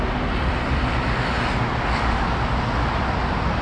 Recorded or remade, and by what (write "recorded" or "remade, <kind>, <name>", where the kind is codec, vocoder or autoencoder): recorded